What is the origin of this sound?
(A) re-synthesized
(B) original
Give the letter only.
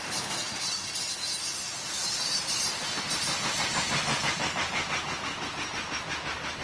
B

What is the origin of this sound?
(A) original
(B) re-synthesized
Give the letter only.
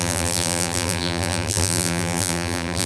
B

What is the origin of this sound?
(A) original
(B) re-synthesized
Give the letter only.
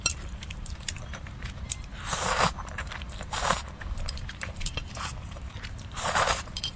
B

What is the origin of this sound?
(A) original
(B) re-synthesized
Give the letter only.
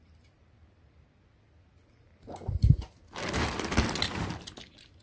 A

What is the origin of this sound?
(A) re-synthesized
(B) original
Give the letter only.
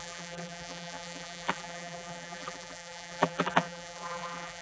A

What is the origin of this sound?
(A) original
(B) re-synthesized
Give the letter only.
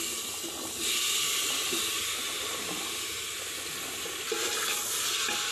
A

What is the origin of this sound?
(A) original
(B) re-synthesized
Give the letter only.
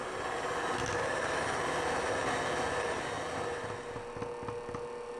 A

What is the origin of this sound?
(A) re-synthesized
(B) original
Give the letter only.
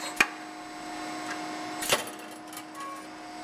B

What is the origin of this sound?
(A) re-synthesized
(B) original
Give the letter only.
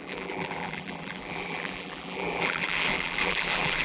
A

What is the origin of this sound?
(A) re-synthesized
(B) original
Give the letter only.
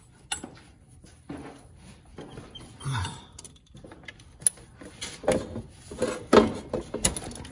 B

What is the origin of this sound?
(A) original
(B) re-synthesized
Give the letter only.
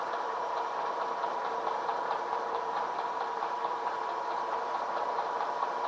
B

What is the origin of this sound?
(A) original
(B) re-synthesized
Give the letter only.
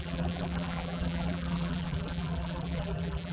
B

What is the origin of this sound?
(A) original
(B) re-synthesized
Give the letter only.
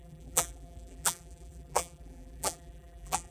B